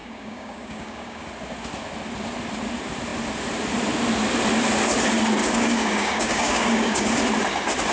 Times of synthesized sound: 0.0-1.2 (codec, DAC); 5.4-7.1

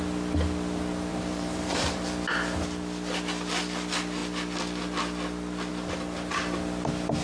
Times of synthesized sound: 1.1-2.2 (vocoder, BigVGAN v2)